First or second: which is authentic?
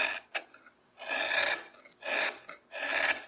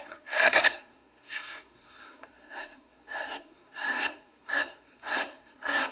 first